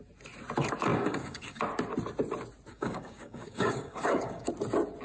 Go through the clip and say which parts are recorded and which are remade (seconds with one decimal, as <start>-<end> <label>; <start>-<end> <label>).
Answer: 0.0-0.9 recorded; 0.9-1.6 remade; 1.6-2.7 recorded; 2.7-4.5 remade; 4.5-5.0 recorded